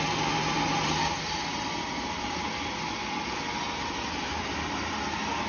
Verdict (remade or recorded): recorded